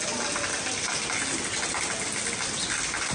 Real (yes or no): yes